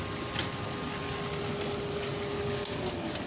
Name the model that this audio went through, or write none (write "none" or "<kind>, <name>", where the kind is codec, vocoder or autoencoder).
none